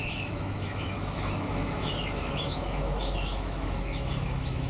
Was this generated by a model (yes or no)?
yes